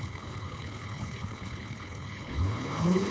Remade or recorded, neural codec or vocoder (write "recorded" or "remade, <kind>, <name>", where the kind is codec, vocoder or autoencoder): remade, codec, HILCodec